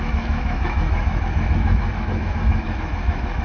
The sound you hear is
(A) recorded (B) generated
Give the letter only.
B